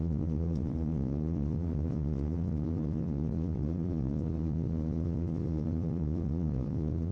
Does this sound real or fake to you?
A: fake